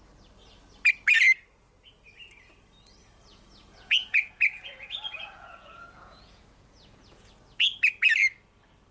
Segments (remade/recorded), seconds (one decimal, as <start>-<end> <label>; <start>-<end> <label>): 0.0-3.0 recorded; 3.0-7.3 remade; 7.3-8.9 recorded